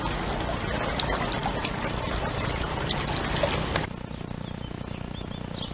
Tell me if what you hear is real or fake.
real